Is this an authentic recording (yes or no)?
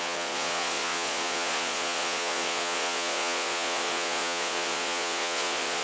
no